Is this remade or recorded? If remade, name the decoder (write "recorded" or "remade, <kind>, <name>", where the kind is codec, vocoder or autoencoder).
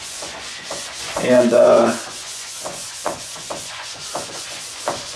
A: remade, vocoder, Vocos